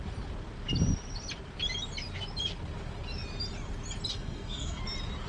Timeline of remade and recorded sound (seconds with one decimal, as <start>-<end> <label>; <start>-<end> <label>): 0.0-4.1 recorded; 4.1-4.8 remade; 4.8-5.3 recorded